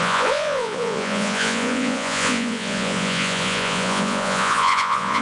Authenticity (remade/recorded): remade